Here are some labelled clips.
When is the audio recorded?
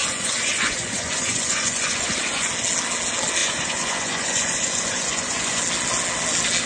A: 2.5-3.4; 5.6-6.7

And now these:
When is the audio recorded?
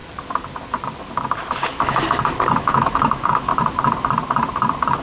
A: 0.0-2.6; 3.5-5.0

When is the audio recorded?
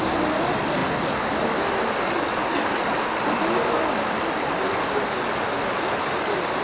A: 0.0-6.6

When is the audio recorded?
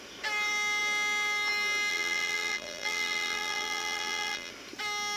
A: 0.0-1.9; 4.5-5.2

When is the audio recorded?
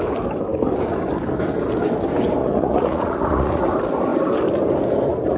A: 0.0-2.4; 3.6-5.4